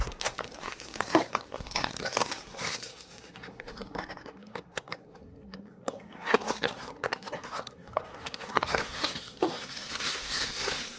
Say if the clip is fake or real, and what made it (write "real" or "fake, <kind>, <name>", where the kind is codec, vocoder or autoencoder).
fake, codec, SNAC